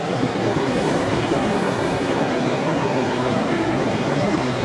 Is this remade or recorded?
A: remade